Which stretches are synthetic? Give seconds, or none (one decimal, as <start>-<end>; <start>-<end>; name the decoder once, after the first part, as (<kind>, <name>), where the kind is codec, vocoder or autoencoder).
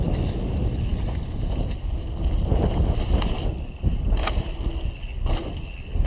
none